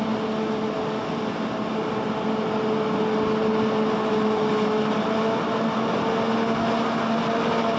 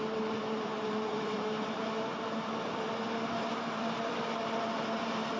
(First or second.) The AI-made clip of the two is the second